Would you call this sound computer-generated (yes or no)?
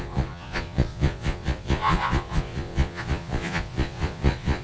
yes